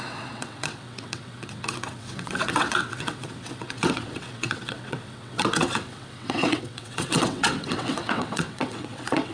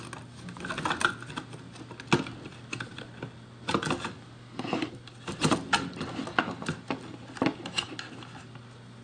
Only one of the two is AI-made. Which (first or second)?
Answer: first